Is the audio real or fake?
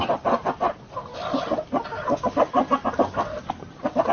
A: real